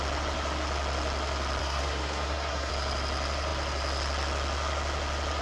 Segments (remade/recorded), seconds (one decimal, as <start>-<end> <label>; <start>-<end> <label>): 0.0-1.6 recorded; 1.6-2.7 remade; 2.7-5.4 recorded